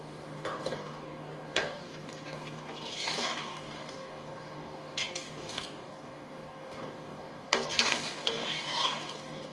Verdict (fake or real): fake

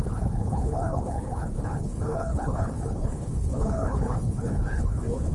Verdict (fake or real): fake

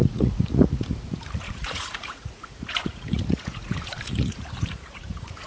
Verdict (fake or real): fake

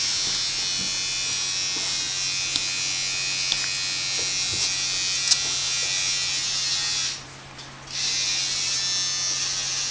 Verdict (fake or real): real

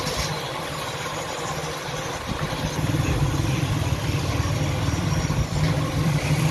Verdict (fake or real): fake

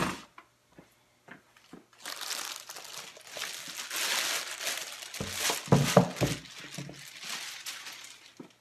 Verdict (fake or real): real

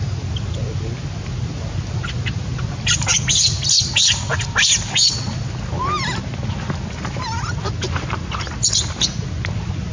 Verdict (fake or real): real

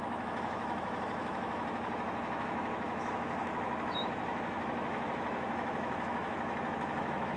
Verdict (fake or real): fake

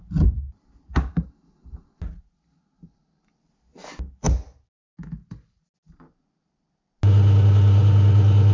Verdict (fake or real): real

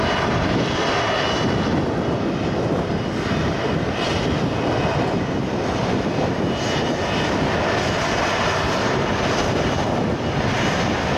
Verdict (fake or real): real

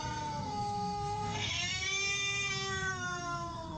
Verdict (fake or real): fake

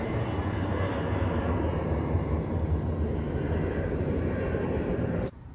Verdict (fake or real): fake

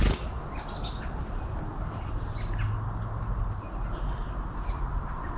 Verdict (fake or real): real